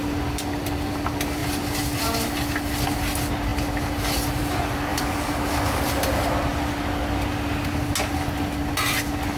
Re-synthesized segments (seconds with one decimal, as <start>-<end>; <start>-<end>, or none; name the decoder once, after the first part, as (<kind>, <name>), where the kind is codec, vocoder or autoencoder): 4.9-5.8 (codec, DAC)